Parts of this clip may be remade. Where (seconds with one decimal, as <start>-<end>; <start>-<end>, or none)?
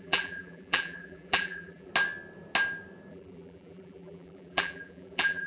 0.0-1.9; 3.1-5.5